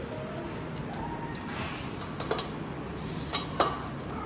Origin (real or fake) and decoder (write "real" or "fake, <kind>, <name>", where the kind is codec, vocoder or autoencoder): real